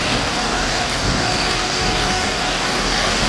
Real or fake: fake